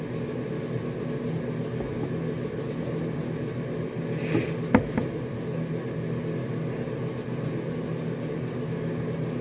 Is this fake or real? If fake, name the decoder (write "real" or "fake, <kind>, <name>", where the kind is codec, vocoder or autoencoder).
real